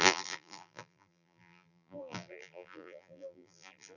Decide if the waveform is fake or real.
fake